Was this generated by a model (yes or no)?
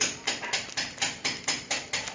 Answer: no